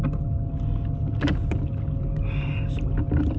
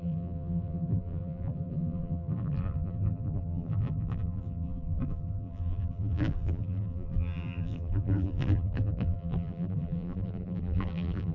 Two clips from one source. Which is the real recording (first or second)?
first